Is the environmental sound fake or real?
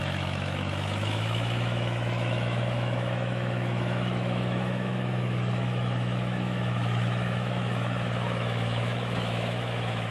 fake